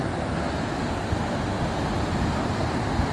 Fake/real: real